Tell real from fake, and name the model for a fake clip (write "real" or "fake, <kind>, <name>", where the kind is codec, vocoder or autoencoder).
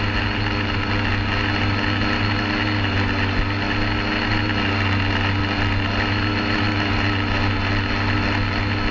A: real